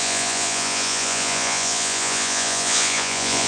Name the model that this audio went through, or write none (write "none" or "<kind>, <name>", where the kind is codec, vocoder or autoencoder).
vocoder, Vocos